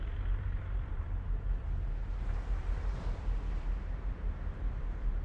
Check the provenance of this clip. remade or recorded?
remade